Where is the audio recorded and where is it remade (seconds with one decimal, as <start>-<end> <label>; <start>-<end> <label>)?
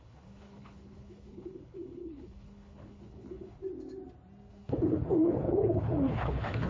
0.0-3.6 remade; 3.6-4.5 recorded; 4.5-6.7 remade